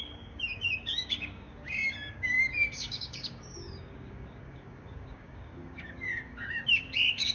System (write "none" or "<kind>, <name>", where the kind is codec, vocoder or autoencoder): codec, DAC